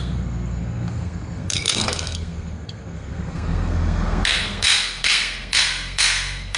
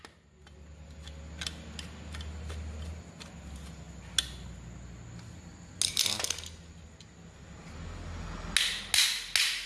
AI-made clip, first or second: first